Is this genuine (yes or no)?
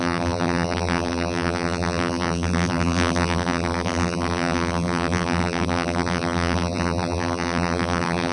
no